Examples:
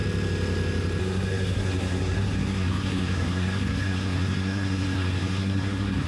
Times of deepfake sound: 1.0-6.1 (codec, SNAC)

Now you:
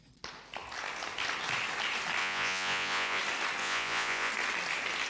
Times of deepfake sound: 2.2-3.2 (vocoder, Vocos); 3.6-4.3

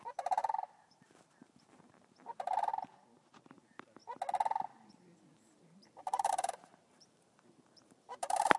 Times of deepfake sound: 0.0-2.7 (vocoder, BigVGAN v2); 3.5-4.0; 5.2-8.6

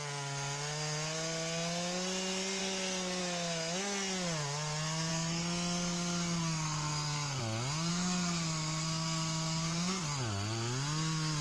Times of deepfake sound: 2.6-3.2 (codec, SNAC); 5.1-7.4; 7.9-10.0

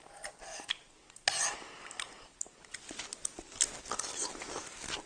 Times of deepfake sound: none